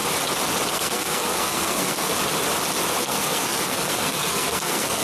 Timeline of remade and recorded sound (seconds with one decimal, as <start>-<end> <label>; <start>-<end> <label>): 0.0-0.7 recorded; 0.7-2.1 remade; 2.1-3.0 recorded; 3.0-5.0 remade

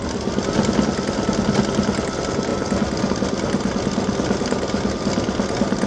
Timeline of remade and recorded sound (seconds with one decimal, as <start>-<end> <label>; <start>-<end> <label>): 0.0-5.9 recorded

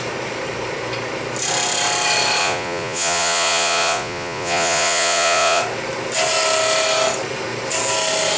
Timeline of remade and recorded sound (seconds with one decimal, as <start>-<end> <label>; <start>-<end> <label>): 0.0-2.4 recorded; 2.4-5.6 remade; 5.6-8.4 recorded

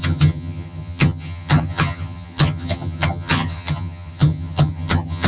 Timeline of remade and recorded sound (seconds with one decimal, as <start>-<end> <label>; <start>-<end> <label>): 0.0-5.3 remade